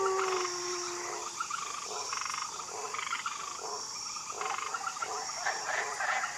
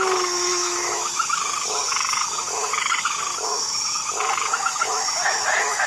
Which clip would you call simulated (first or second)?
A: second